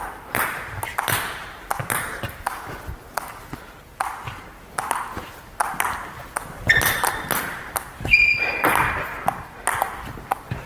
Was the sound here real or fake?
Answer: real